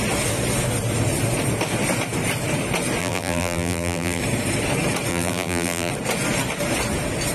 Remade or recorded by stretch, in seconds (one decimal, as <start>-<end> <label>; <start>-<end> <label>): 0.0-3.0 recorded; 3.0-4.2 remade; 4.2-5.1 recorded; 5.1-5.9 remade; 5.9-7.3 recorded